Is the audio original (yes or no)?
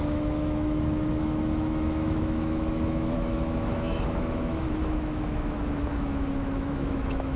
no